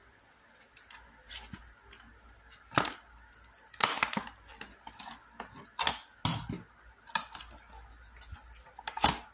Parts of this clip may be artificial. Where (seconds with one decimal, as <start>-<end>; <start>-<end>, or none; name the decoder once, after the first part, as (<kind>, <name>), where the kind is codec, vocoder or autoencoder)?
none